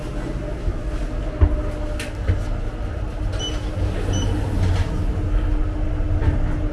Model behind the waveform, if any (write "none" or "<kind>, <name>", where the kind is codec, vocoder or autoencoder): none